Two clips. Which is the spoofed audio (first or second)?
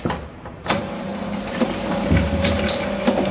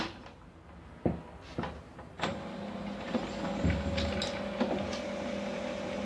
first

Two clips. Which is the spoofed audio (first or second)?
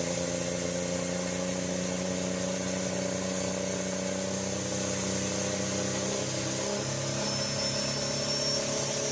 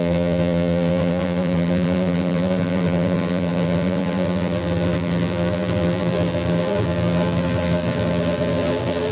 second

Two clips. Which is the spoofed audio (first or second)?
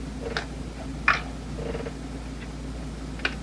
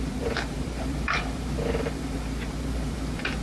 second